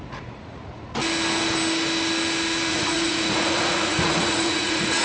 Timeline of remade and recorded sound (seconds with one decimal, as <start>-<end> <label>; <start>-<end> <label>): 0.0-1.0 remade; 1.0-2.7 recorded; 2.7-5.0 remade